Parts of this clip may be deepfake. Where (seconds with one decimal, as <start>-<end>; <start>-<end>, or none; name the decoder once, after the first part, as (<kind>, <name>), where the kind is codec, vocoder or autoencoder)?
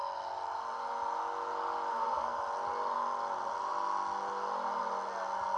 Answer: 1.9-2.4 (codec, SNAC)